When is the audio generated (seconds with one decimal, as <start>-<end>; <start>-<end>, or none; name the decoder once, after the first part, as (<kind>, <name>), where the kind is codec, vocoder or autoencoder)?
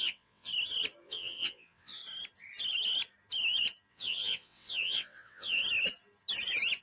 0.0-0.5 (vocoder, WaveNeXt); 1.0-2.0; 3.9-5.6